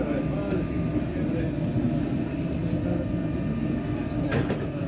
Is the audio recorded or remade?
recorded